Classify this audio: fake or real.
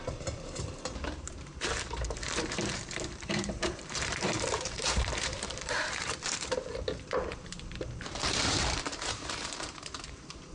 fake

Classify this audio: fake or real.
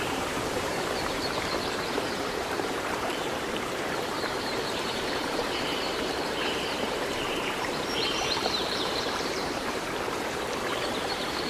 fake